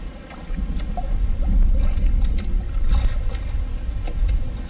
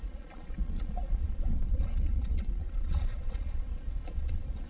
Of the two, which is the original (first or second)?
first